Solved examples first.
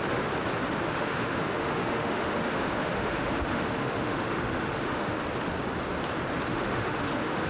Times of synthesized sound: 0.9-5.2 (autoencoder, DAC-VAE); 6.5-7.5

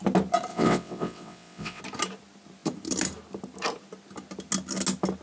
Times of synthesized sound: 0.5-1.8 (vocoder, WaveNeXt)

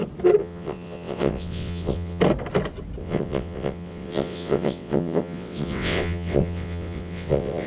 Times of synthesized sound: 0.4-2.2 (vocoder, WaveNeXt); 3.0-7.7

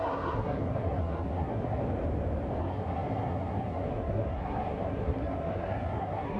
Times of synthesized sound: 0.0-1.8 (codec, SNAC); 2.6-6.4